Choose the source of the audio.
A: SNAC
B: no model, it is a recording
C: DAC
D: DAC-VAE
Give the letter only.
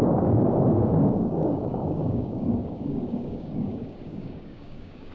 C